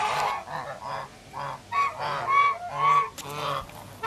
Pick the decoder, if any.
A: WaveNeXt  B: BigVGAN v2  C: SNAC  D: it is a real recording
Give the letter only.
D